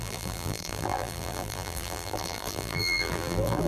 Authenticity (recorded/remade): remade